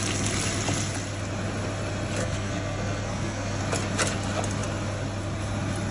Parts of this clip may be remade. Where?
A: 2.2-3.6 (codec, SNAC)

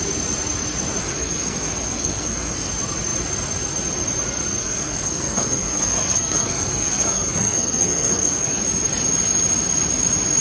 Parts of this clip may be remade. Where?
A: 1.0-2.7 (codec, SNAC); 4.6-8.6

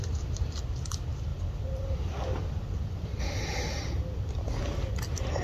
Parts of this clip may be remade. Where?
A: none

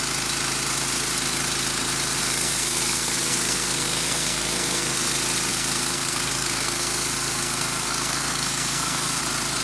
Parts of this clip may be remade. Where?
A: 2.2-5.1 (codec, SNAC); 5.5-9.2

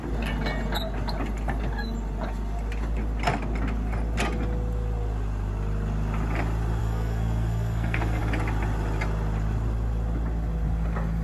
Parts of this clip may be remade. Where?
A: 6.8-8.2 (codec, SNAC)

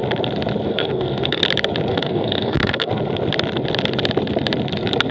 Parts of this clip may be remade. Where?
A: 0.7-1.4 (codec, SNAC); 1.9-2.9